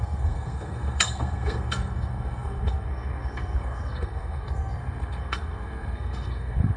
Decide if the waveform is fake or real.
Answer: fake